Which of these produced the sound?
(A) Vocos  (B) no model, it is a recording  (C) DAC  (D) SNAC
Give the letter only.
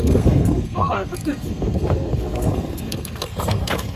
D